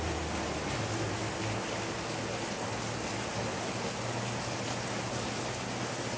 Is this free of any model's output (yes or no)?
yes